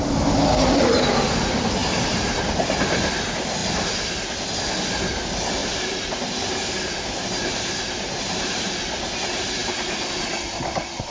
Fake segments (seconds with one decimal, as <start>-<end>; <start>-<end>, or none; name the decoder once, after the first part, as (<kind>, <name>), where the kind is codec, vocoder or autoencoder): 1.8-2.3 (vocoder, BigVGAN v2); 5.6-8.8